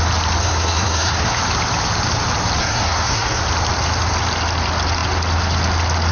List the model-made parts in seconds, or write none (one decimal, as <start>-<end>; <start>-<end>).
0.4-1.4; 2.6-3.4

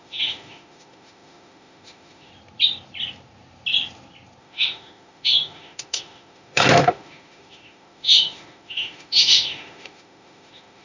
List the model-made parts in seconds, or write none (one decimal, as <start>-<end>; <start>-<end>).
0.0-2.3; 4.4-10.8

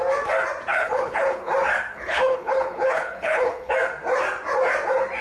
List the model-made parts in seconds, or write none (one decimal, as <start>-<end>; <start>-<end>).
0.7-1.5; 1.9-3.7

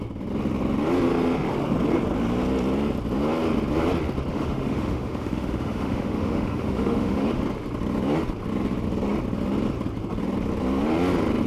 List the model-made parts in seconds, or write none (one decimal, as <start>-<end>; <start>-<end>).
4.3-7.4

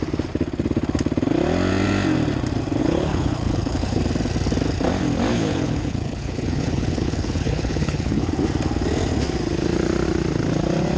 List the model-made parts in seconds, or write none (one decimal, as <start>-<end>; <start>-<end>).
2.8-4.0; 5.3-8.3